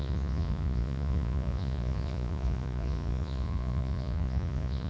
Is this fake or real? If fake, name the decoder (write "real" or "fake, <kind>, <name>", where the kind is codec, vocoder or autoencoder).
fake, vocoder, Vocos